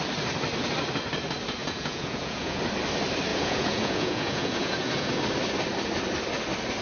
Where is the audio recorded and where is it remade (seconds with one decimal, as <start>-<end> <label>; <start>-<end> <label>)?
0.0-1.6 recorded; 1.6-2.6 remade; 2.6-3.3 recorded; 3.3-5.1 remade; 5.1-6.8 recorded